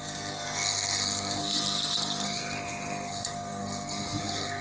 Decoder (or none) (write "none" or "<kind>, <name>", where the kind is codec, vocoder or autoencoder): codec, SNAC